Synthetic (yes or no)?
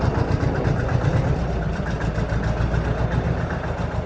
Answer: no